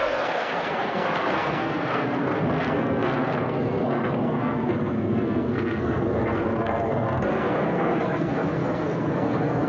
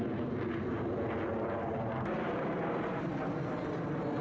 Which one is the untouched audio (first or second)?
second